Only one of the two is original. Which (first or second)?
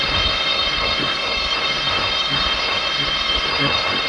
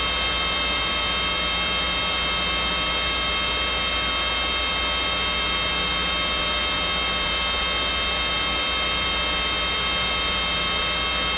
second